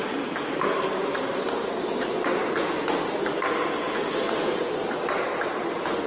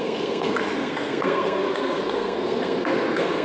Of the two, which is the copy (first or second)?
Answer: second